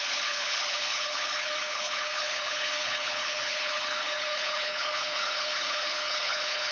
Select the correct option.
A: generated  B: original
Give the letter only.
A